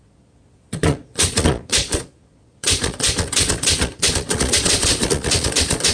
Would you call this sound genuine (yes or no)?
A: no